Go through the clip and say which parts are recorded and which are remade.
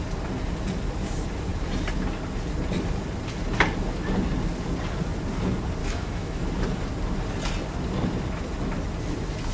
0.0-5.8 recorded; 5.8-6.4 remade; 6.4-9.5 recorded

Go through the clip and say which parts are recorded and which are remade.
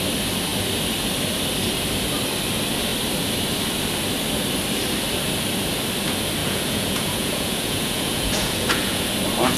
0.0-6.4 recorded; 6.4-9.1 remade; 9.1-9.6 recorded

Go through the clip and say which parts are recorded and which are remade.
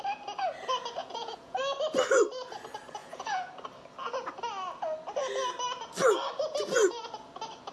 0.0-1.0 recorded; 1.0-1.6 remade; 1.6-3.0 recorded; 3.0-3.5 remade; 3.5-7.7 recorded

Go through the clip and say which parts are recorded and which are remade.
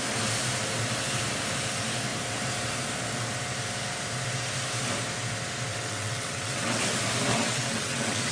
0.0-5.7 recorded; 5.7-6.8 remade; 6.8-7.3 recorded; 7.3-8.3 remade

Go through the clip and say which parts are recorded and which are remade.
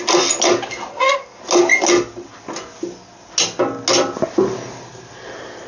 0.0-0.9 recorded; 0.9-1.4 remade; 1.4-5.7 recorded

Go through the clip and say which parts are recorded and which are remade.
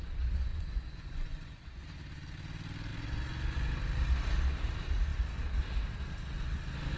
0.0-0.5 recorded; 0.5-1.8 remade; 1.8-7.0 recorded